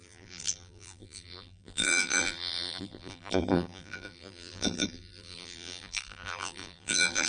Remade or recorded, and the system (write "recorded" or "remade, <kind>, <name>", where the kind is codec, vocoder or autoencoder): remade, vocoder, BigVGAN v2